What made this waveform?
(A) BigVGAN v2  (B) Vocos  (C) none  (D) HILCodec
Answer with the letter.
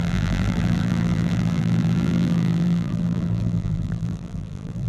A